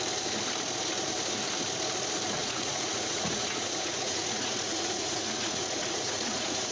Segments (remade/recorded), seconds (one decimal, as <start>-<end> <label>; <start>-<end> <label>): 0.0-2.4 recorded; 2.4-6.7 remade